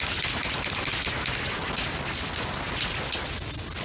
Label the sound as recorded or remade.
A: recorded